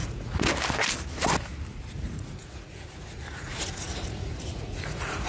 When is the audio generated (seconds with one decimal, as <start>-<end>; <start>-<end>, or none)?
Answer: 0.0-0.5; 1.7-5.3